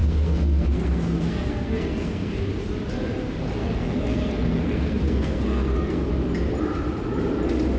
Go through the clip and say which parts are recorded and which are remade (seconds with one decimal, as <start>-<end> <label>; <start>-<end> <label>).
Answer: 0.0-2.4 remade; 2.4-3.6 recorded; 3.6-6.1 remade; 6.1-7.8 recorded